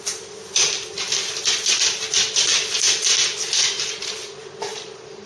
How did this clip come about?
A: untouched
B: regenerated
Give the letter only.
A